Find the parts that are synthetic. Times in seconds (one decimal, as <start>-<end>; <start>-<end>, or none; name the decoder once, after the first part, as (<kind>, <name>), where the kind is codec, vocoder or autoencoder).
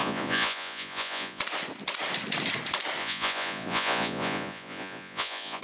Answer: 0.0-1.4 (vocoder, Vocos); 3.0-5.6